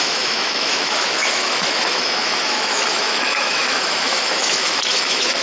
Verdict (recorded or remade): remade